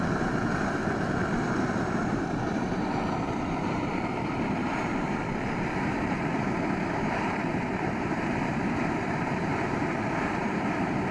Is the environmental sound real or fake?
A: fake